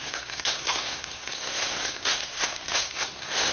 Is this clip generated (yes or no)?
yes